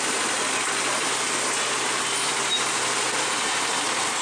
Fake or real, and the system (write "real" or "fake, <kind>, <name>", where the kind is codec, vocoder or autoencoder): real